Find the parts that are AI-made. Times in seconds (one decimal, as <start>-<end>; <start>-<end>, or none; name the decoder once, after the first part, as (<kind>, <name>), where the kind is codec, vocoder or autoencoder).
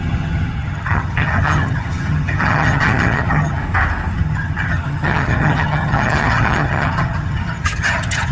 0.0-3.6 (vocoder, HiFi-GAN); 4.1-8.3